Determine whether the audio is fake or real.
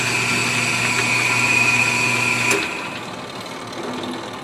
real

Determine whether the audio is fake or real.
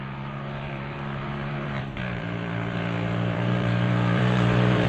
fake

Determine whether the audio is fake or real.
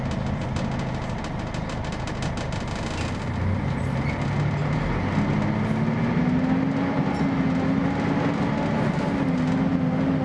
real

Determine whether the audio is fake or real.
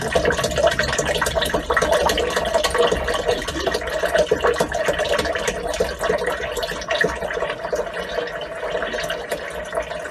real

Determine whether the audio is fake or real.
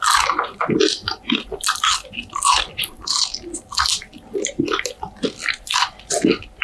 real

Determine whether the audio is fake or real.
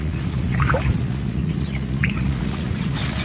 fake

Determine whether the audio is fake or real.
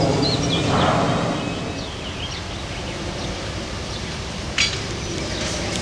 real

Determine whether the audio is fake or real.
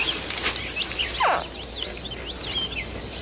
real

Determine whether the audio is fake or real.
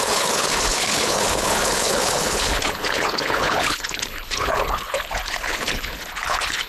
fake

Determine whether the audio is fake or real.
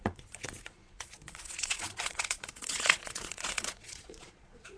fake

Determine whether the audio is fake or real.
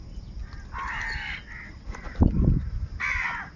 real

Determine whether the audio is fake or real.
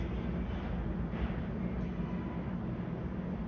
real